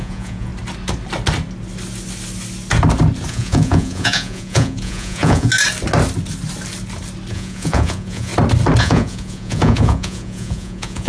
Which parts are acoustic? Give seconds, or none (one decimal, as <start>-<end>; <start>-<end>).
0.5-3.3; 5.5-7.3; 8.3-8.8